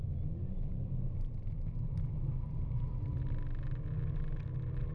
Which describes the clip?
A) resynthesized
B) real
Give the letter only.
B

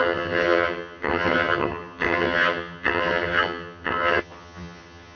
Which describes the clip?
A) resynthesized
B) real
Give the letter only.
A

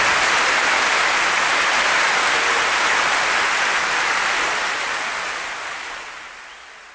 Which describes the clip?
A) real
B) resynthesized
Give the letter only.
A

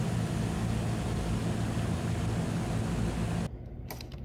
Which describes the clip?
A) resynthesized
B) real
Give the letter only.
B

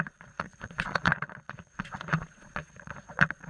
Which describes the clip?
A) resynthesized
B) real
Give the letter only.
A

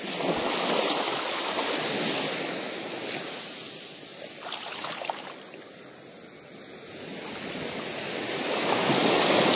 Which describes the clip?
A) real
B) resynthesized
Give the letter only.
A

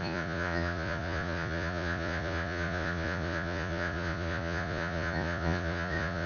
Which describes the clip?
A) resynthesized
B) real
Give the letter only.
A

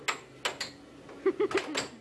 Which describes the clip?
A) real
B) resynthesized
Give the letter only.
A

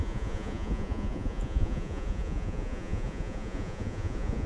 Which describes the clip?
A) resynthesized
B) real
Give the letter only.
A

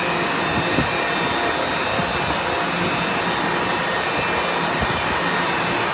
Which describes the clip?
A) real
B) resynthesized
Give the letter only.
A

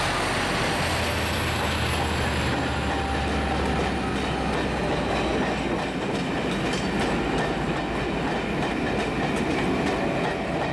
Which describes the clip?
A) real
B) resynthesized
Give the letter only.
A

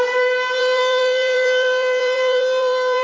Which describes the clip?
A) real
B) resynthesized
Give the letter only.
B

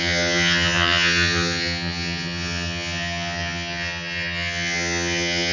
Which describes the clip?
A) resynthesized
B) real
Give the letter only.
A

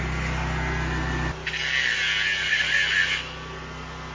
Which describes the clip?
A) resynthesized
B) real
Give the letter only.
B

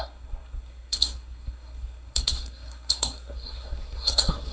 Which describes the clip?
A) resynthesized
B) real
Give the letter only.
A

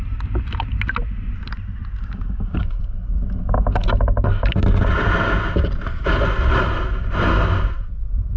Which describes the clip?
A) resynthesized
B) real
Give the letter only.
B